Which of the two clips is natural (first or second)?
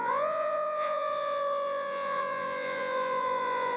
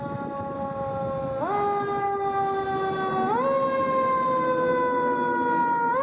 second